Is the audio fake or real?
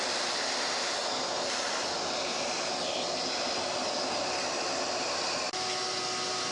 real